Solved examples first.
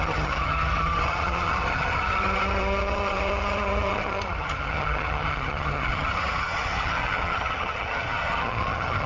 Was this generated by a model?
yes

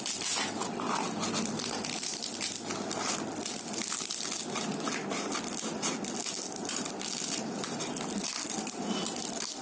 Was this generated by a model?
no